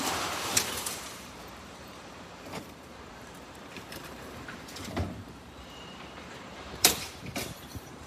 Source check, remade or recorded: remade